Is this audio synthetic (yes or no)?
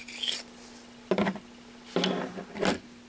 no